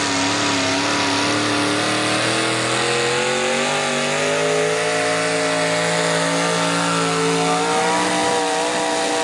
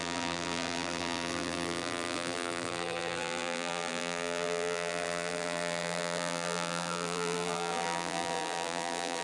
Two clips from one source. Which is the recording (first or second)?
first